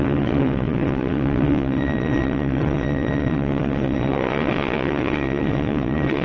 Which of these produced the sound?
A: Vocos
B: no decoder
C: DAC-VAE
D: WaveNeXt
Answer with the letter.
D